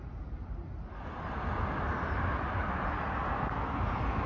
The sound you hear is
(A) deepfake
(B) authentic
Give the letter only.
B